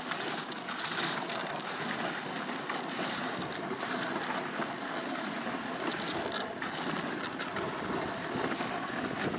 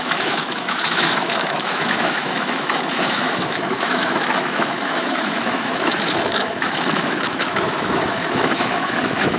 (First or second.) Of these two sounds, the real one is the first